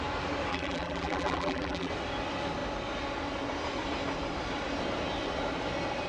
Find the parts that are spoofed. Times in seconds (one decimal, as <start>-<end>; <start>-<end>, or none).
0.5-1.9